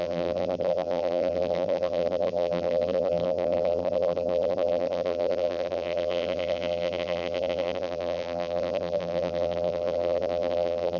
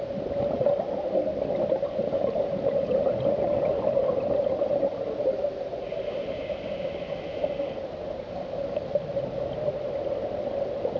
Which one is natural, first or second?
second